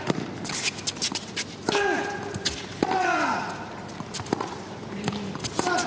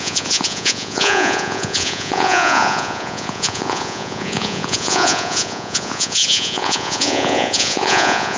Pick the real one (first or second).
first